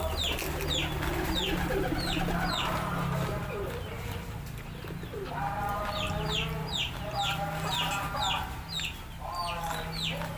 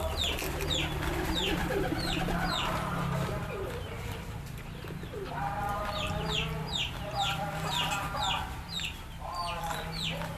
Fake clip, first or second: second